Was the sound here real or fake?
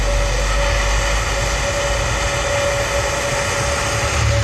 real